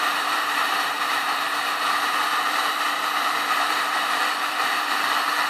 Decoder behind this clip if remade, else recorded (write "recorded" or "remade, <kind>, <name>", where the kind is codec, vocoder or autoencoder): remade, vocoder, BigVGAN v2